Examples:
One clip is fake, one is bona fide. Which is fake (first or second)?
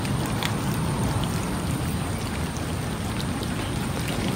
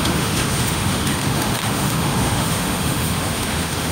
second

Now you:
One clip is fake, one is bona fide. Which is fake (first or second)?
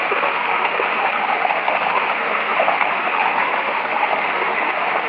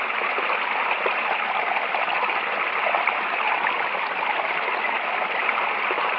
first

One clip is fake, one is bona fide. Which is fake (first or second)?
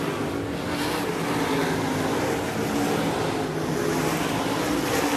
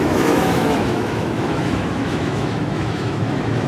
second